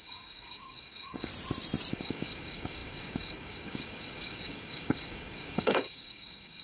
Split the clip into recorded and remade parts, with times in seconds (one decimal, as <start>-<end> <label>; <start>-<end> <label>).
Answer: 0.0-1.3 remade; 1.3-1.9 recorded; 1.9-6.6 remade

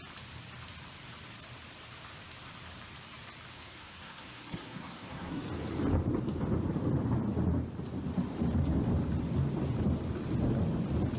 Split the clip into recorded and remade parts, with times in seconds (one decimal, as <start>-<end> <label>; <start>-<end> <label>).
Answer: 0.0-3.6 recorded; 3.6-5.4 remade; 5.4-11.2 recorded

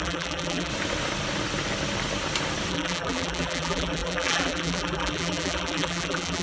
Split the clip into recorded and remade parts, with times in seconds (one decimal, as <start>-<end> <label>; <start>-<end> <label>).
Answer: 0.0-0.7 remade; 0.7-2.7 recorded; 2.7-6.4 remade